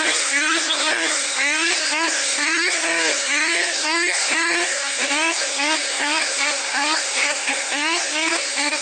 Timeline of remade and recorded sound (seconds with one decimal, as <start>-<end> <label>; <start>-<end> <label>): 0.0-8.8 remade